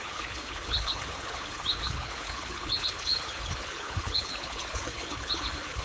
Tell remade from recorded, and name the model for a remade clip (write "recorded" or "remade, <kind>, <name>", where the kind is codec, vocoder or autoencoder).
remade, codec, HILCodec